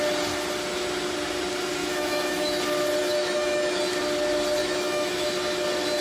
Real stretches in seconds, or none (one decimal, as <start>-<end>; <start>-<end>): 0.0-1.8; 2.6-3.0; 3.8-4.6; 5.3-6.0